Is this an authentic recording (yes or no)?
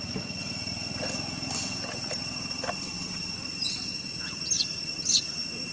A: yes